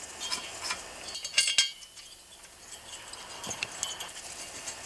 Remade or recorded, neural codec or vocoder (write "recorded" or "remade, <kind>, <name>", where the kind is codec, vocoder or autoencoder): recorded